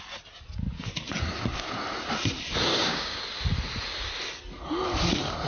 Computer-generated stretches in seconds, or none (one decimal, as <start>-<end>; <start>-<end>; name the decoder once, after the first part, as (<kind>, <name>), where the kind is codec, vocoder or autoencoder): 2.7-3.2 (codec, DAC)